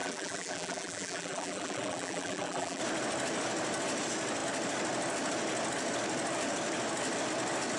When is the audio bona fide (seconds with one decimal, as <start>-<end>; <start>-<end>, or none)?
2.8-7.8